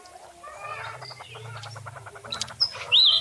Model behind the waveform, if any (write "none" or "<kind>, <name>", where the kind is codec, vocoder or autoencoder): none